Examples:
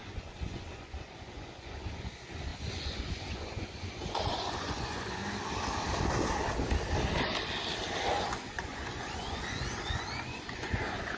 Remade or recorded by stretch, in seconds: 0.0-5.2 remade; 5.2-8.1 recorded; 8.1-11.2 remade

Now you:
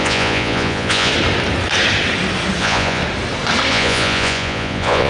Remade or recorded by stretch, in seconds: 0.0-1.1 remade; 1.1-2.6 recorded; 2.6-3.0 remade; 3.0-3.7 recorded; 3.7-5.1 remade